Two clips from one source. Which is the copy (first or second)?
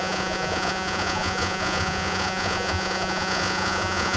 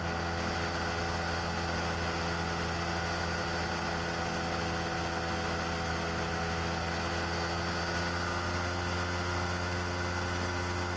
first